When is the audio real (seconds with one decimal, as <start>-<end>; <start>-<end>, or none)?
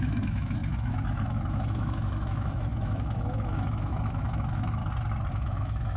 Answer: 4.8-5.3